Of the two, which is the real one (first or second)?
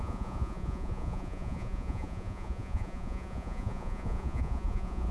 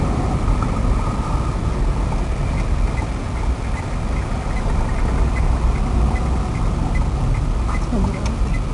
second